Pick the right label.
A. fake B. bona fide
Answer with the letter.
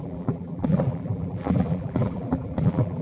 A